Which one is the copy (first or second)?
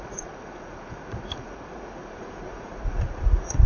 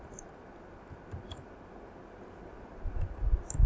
first